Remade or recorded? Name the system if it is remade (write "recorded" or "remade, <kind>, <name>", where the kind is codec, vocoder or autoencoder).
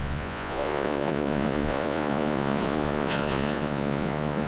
remade, vocoder, Vocos